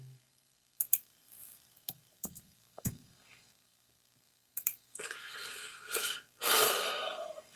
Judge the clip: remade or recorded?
remade